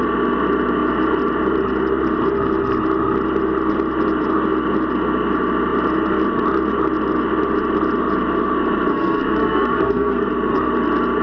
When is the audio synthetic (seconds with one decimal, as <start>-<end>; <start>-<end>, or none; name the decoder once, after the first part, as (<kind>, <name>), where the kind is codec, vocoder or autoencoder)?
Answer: 8.9-10.3 (codec, SNAC)